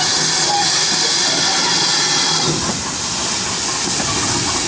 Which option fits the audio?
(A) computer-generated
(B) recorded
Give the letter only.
B